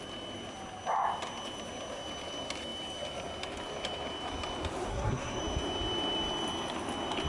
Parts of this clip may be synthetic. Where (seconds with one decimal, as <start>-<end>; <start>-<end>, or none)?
4.9-5.4